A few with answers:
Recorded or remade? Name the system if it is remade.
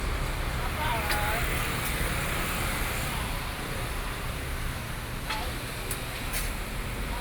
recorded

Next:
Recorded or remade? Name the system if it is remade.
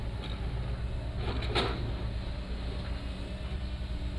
recorded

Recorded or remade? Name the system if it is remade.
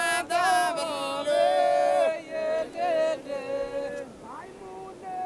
recorded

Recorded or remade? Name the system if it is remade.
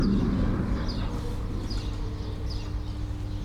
recorded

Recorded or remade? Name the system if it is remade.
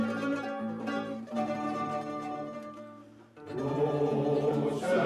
remade, vocoder, BigVGAN v2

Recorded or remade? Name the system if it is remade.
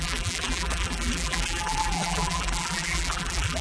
remade, vocoder, BigVGAN v2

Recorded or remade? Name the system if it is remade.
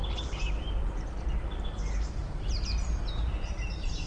remade, vocoder, BigVGAN v2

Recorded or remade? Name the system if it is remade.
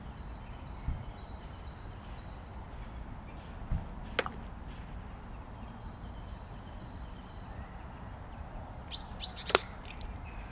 recorded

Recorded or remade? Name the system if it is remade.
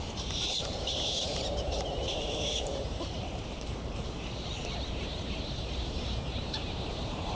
remade, vocoder, BigVGAN v2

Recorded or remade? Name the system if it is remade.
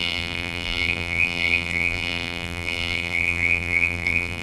remade, vocoder, BigVGAN v2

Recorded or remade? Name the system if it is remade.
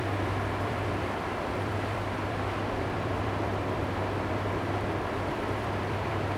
remade, vocoder, BigVGAN v2